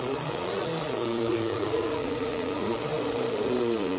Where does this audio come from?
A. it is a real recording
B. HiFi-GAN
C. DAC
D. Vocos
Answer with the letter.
D